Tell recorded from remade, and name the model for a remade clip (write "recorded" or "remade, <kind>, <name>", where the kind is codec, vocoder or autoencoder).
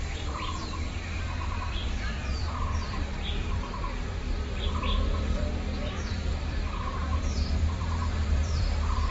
remade, vocoder, BigVGAN v2